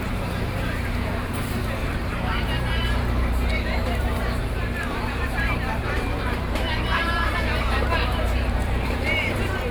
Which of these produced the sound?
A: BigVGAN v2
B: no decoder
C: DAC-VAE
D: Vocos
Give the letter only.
A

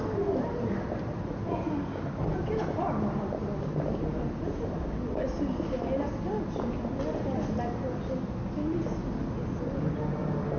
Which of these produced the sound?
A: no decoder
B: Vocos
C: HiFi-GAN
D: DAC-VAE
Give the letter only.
A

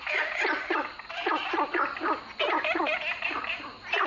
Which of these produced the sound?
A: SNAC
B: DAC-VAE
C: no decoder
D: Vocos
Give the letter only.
C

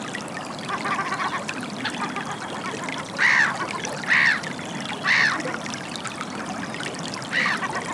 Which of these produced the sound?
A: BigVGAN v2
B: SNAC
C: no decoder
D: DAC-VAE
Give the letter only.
C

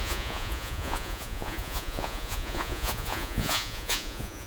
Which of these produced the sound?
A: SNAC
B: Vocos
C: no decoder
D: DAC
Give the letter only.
B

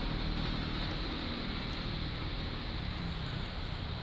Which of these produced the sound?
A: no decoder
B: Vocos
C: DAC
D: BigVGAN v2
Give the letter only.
A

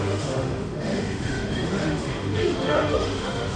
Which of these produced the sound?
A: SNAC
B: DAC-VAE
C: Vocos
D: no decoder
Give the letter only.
B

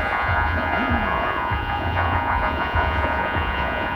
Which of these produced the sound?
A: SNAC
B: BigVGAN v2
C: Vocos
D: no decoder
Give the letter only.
C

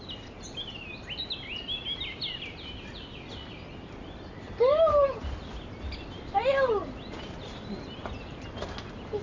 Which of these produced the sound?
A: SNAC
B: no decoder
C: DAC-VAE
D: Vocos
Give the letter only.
B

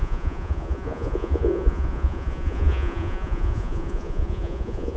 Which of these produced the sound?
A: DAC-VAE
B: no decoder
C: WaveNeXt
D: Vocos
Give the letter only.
D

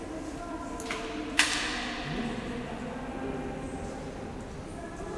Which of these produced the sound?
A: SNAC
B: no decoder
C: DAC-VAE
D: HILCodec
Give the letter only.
B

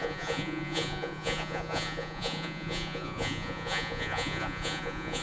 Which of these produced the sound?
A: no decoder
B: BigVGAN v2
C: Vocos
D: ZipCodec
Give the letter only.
C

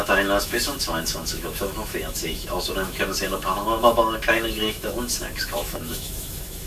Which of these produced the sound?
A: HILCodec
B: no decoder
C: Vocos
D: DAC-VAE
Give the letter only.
D